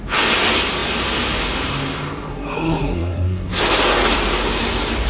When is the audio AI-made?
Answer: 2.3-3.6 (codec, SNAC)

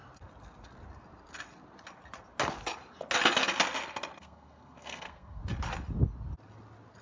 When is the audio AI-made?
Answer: 4.2-5.4 (codec, SNAC)

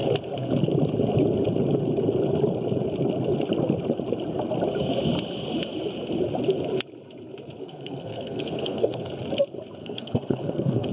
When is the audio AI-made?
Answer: 7.6-9.1 (codec, SNAC); 9.8-10.9

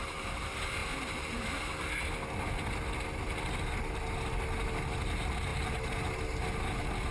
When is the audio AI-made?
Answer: none

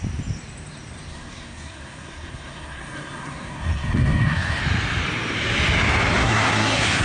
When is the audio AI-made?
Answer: 1.1-4.6 (codec, SNAC); 6.2-7.0